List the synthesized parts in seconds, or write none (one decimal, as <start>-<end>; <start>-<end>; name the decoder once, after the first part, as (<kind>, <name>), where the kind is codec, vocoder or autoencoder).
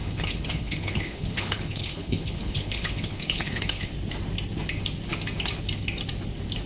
0.0-3.9 (codec, HILCodec)